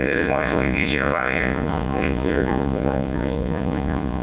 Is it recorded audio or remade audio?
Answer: remade